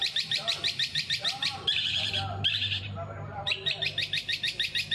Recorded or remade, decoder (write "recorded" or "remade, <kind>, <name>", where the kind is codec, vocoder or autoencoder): remade, vocoder, BigVGAN v2